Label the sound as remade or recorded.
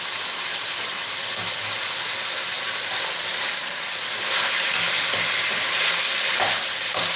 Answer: recorded